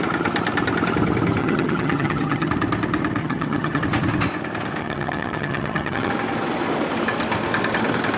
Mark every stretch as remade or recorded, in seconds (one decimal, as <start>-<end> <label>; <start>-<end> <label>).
0.0-1.4 recorded; 1.4-2.5 remade; 2.5-3.2 recorded; 3.2-3.8 remade; 3.8-4.8 recorded; 4.8-6.1 remade; 6.1-8.2 recorded

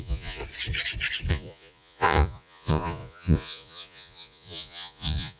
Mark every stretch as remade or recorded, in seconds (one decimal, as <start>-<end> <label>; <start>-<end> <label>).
0.0-0.4 remade; 0.4-1.3 recorded; 1.3-5.4 remade

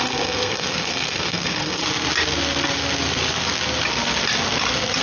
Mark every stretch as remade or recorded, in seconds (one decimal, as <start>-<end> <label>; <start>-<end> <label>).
0.0-1.8 remade; 1.8-5.0 recorded